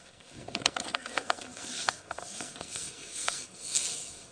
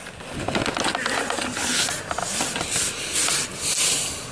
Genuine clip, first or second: second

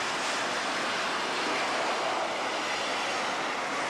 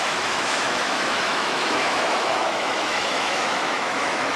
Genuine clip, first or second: first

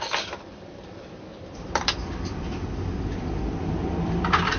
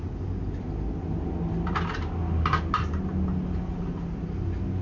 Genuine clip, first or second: second